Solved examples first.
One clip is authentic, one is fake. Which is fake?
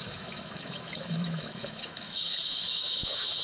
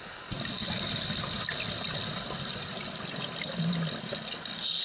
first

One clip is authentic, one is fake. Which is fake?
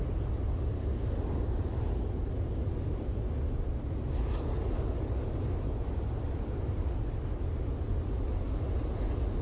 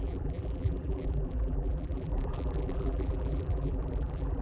second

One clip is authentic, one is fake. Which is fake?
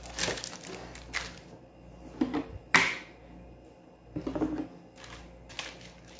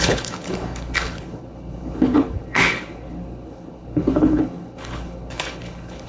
second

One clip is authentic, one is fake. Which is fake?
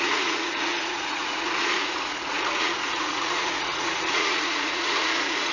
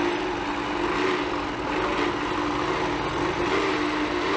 first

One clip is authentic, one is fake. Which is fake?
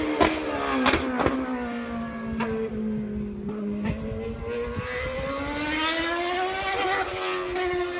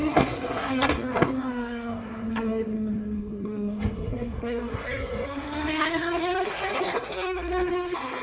second